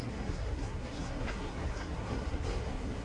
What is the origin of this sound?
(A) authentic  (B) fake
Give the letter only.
B